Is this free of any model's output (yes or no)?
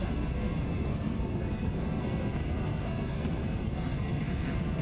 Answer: no